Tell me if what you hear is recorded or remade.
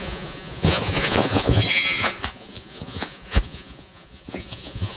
remade